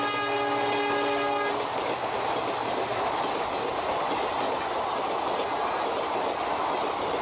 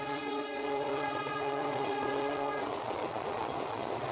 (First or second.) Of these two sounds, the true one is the first